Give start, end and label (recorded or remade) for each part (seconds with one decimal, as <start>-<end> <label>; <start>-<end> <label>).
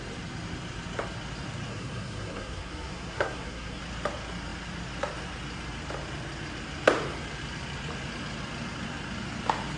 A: 0.0-1.7 recorded; 1.7-3.8 remade; 3.8-9.8 recorded